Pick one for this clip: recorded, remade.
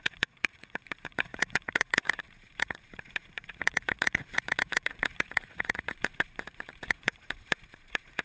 remade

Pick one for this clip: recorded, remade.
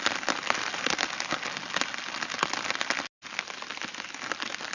recorded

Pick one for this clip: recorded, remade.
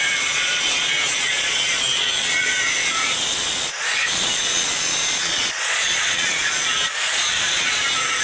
remade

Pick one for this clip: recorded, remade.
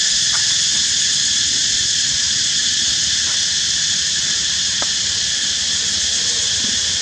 recorded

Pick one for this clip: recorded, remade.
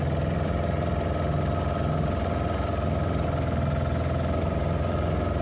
recorded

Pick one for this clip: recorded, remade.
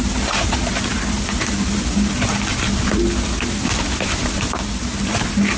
recorded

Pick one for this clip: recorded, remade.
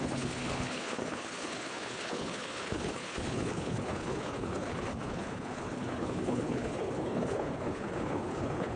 remade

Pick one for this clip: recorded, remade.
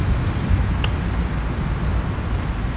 recorded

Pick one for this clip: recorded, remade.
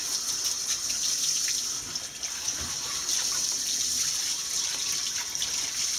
recorded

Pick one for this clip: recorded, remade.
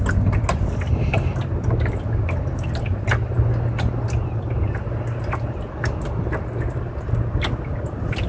recorded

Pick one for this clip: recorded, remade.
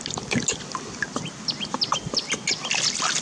recorded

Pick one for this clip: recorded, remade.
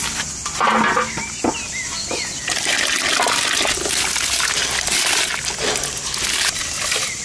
recorded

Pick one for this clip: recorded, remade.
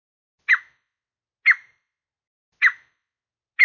recorded